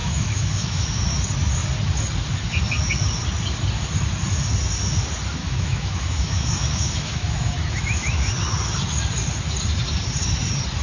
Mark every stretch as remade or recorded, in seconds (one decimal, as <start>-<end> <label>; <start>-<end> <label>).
0.0-1.0 remade; 1.0-5.4 recorded; 5.4-8.3 remade; 8.3-10.8 recorded